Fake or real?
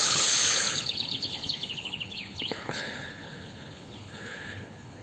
fake